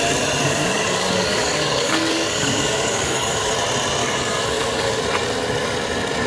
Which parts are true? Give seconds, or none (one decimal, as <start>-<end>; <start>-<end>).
0.0-0.4; 3.5-4.0; 5.0-6.3